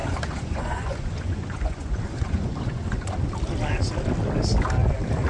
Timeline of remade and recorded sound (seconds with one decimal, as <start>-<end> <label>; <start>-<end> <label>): 0.0-3.2 remade; 3.2-5.3 recorded